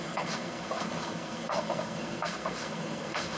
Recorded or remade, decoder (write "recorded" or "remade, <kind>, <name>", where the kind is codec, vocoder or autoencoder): remade, codec, SNAC